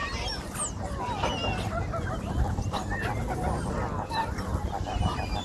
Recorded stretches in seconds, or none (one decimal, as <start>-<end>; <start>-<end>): 0.0-5.4